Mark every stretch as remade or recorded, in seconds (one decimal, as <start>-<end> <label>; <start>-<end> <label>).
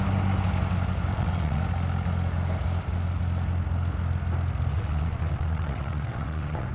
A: 0.0-1.1 recorded; 1.1-1.6 remade; 1.6-4.7 recorded; 4.7-6.7 remade